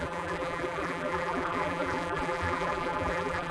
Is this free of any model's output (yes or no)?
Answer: no